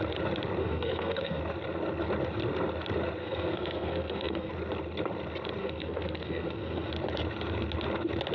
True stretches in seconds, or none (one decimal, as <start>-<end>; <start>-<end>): 0.0-0.6; 1.4-3.2; 4.5-5.6; 6.9-8.3